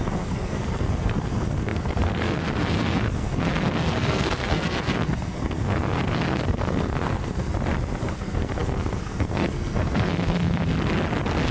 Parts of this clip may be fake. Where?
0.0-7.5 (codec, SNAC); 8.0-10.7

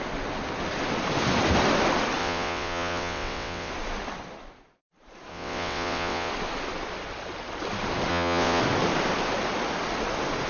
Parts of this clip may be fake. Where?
2.2-3.7 (vocoder, WaveNeXt); 5.3-6.3; 8.1-8.6